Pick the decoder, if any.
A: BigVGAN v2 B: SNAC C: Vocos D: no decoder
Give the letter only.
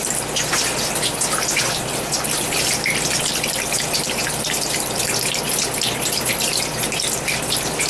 D